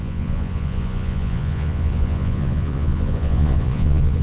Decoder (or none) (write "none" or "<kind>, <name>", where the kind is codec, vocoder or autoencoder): vocoder, Vocos